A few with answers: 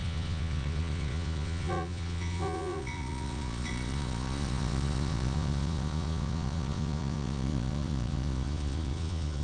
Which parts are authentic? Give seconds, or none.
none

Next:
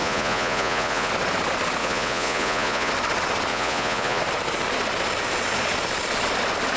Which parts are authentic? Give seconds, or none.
1.1-1.8; 2.9-3.5; 4.2-6.8